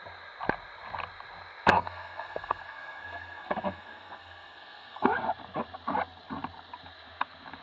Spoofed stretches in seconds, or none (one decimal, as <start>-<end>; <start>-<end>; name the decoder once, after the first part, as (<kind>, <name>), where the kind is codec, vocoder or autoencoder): 1.7-5.1 (codec, SNAC)